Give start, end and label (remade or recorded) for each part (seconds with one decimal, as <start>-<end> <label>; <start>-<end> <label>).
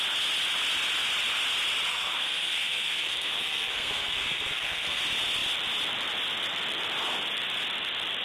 0.0-1.9 recorded; 1.9-5.0 remade; 5.0-8.2 recorded